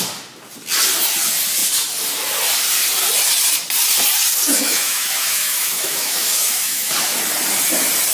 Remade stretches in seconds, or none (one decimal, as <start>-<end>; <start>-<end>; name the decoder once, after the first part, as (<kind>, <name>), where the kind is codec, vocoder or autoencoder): 4.5-6.9 (autoencoder, DAC-VAE)